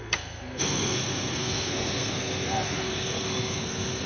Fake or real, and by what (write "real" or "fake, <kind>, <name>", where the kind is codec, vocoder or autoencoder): fake, codec, SNAC